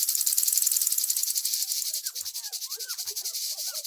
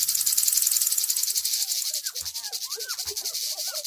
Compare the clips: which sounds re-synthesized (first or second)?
first